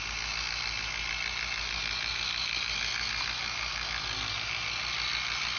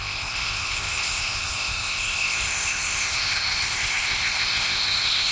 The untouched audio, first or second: first